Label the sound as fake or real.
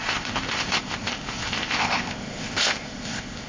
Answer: fake